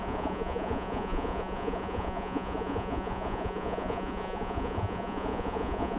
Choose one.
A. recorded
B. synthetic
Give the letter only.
B